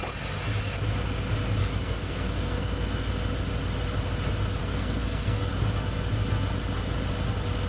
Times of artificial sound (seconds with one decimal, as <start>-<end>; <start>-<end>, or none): 1.6-3.1; 4.6-5.5